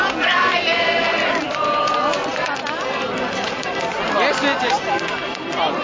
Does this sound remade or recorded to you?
recorded